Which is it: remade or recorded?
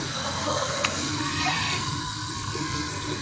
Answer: remade